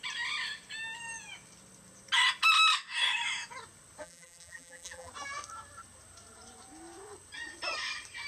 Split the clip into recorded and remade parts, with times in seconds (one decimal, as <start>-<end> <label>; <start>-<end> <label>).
0.0-4.0 recorded; 4.0-5.1 remade; 5.1-8.3 recorded